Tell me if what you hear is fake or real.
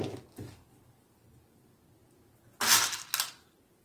real